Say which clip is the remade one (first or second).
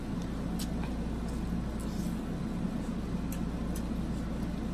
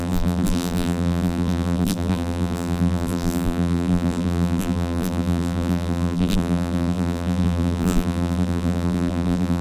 second